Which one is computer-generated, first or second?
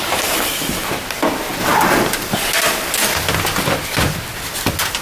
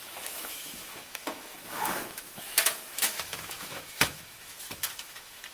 second